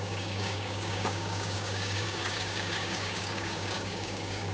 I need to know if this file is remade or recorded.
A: remade